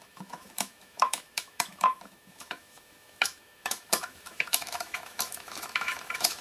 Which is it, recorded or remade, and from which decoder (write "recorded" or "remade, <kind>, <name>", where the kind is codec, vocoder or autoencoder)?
remade, autoencoder, DAC-VAE